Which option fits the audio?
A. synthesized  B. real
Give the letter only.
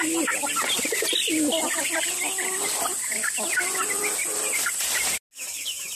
B